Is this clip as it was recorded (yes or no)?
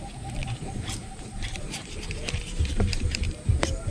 no